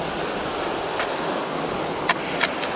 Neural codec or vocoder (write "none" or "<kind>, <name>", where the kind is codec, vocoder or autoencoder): none